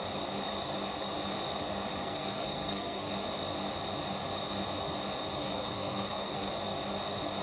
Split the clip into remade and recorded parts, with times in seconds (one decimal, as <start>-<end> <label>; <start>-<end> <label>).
0.0-2.0 recorded; 2.0-3.1 remade; 3.1-5.4 recorded; 5.4-6.5 remade; 6.5-7.4 recorded